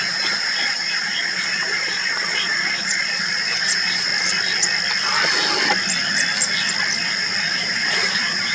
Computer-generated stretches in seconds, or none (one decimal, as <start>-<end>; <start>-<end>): 0.0-4.1; 7.5-8.5